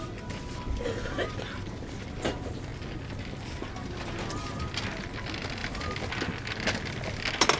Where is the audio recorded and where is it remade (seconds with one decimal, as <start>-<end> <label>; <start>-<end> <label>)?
0.0-7.6 recorded

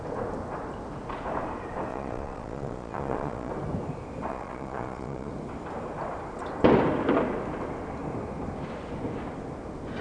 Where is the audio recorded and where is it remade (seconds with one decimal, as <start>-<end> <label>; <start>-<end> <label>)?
0.0-1.9 recorded; 1.9-3.5 remade; 3.5-4.3 recorded; 4.3-5.3 remade; 5.3-10.0 recorded

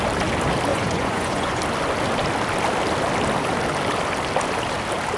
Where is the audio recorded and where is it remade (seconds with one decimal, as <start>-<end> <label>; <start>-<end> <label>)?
0.0-0.7 recorded; 0.7-1.6 remade; 1.6-5.2 recorded

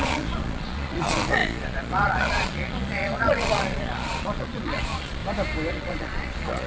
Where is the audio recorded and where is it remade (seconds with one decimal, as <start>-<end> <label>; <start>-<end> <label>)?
0.0-5.2 remade; 5.2-5.7 recorded; 5.7-6.7 remade

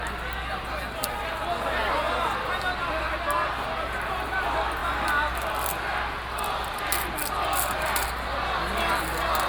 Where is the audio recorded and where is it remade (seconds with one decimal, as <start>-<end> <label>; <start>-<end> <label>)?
0.0-9.5 recorded

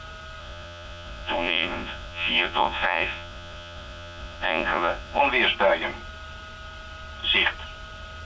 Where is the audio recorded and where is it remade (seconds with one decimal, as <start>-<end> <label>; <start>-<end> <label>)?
0.0-0.4 recorded; 0.4-5.2 remade; 5.2-8.2 recorded

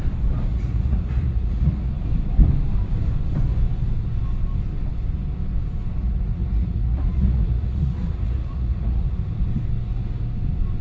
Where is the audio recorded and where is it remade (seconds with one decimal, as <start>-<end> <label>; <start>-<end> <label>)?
0.0-0.5 recorded; 0.5-1.9 remade; 1.9-6.0 recorded; 6.0-9.3 remade; 9.3-10.8 recorded

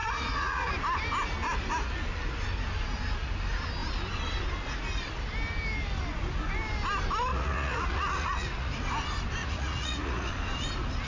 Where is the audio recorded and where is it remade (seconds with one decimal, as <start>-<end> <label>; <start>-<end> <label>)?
0.0-0.7 remade; 0.7-7.3 recorded; 7.3-8.7 remade; 8.7-9.4 recorded; 9.4-10.3 remade; 10.3-11.1 recorded